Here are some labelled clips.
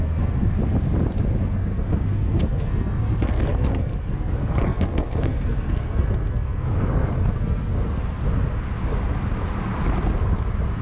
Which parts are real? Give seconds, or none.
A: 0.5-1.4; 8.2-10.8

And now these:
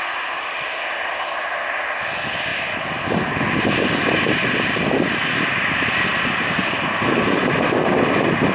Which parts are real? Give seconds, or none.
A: 0.0-8.5

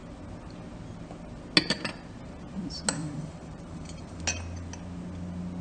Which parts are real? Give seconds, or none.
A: 0.0-3.0; 4.2-5.6